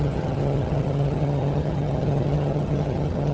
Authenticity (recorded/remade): remade